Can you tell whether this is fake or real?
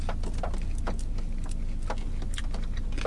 real